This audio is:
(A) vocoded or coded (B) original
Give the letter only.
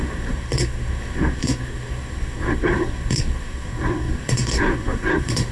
A